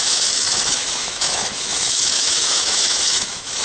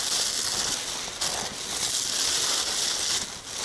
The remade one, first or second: first